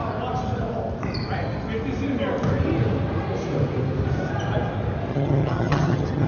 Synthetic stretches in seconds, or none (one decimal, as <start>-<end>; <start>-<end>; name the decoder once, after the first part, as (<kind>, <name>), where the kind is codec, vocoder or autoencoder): 5.1-6.3 (vocoder, HiFi-GAN)